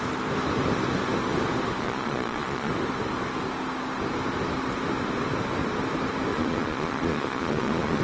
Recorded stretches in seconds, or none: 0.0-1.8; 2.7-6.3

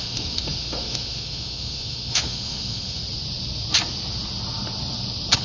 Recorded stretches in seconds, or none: 3.0-5.4

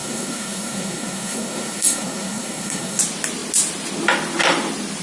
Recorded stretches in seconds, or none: 3.0-5.0

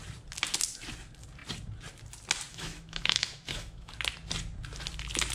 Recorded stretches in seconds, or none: 0.0-2.5; 3.9-5.3

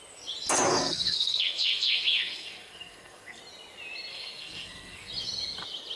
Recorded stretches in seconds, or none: 0.0-0.7; 3.4-4.1; 5.1-6.0

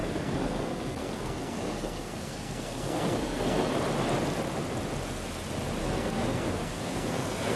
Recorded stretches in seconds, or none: 3.7-5.8